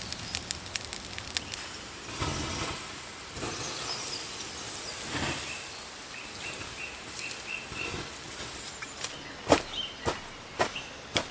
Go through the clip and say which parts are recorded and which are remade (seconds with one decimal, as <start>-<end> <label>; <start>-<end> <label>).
0.0-11.3 recorded